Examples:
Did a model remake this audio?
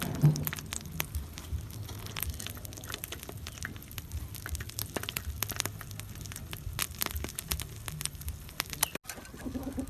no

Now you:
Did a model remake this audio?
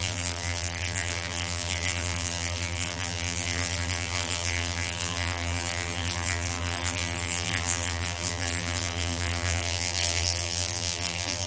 yes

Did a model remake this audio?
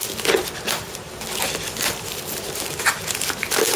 no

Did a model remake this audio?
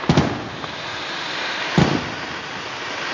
no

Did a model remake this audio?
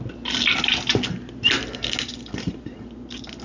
no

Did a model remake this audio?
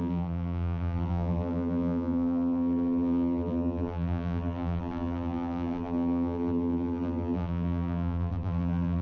yes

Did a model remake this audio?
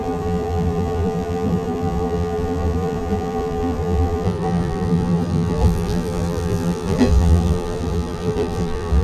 yes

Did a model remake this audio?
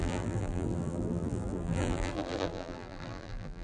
yes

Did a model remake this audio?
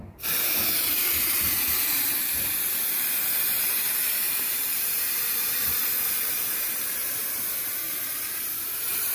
yes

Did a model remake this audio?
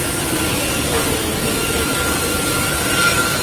yes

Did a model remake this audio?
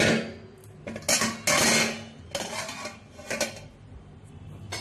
no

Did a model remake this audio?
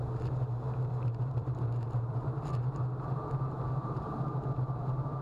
yes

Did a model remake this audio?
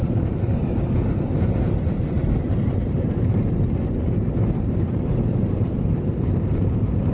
yes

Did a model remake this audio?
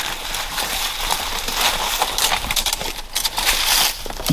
yes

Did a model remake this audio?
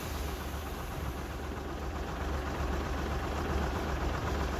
yes